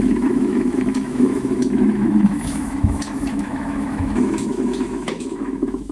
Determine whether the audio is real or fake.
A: fake